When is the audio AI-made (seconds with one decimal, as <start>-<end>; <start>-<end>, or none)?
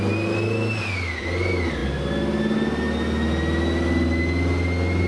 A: none